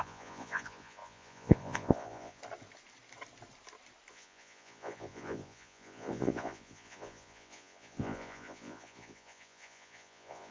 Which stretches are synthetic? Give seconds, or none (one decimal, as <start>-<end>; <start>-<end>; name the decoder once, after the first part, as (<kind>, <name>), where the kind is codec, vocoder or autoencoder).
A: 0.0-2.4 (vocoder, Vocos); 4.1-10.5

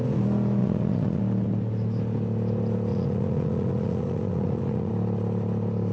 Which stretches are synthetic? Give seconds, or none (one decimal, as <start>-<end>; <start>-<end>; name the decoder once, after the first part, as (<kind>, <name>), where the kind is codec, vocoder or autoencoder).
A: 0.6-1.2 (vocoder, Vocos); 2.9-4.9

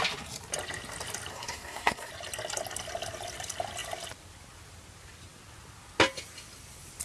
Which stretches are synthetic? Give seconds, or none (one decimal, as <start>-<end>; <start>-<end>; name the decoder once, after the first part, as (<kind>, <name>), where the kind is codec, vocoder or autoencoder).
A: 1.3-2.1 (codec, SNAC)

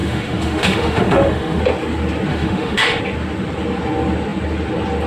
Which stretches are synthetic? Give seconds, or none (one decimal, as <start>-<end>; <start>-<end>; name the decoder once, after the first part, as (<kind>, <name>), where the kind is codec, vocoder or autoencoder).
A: 0.0-1.6 (autoencoder, DAC-VAE); 2.3-3.0

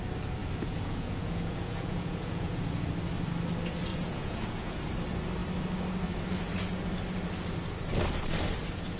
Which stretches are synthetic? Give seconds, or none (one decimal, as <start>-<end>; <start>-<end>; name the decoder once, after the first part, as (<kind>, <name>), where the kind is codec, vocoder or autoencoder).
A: 0.4-2.9 (vocoder, Vocos); 3.9-4.9